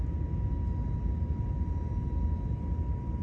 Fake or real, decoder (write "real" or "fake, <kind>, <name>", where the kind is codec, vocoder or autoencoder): real